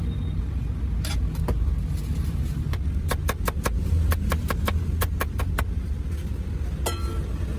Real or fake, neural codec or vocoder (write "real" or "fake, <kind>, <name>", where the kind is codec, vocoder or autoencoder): real